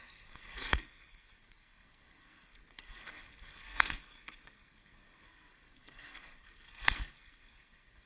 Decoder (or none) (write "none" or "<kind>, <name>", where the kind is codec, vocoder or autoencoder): codec, SNAC